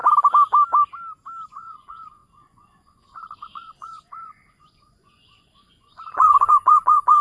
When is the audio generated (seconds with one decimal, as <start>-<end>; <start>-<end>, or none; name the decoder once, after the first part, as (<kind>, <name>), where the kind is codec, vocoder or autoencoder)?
1.5-7.2 (vocoder, Vocos)